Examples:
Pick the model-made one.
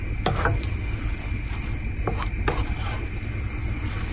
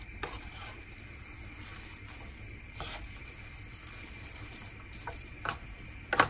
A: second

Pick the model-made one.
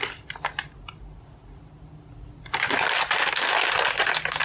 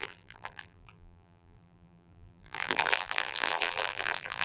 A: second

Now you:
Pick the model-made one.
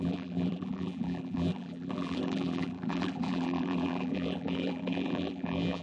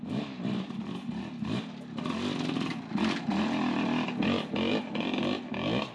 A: first